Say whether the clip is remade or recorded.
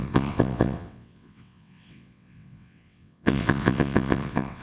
remade